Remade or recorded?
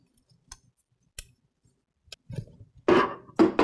recorded